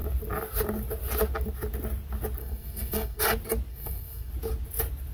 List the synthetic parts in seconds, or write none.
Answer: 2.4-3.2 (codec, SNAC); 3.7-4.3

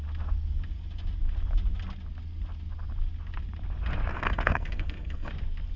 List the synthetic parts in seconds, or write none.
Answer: 4.1-5.3 (codec, SNAC)

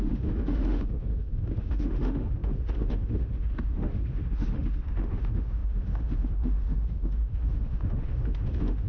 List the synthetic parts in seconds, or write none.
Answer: 0.0-8.9 (autoencoder, DAC-VAE)